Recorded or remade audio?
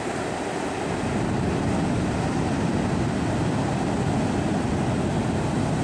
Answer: recorded